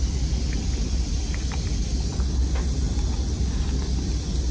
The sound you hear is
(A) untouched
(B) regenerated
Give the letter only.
A